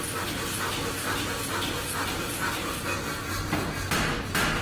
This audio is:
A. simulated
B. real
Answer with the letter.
B